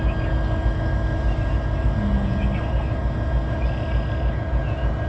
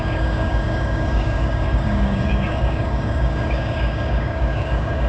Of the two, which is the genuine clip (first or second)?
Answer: first